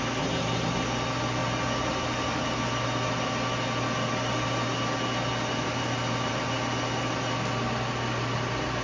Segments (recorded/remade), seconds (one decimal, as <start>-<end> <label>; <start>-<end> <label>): 0.0-8.8 recorded